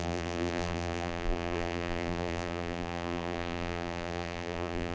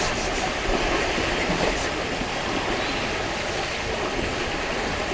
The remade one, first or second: first